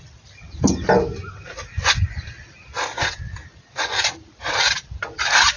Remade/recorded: recorded